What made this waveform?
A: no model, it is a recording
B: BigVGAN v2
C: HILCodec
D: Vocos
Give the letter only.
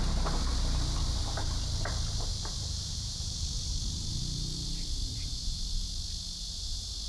B